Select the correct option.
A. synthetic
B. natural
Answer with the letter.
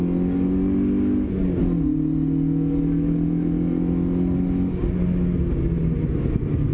B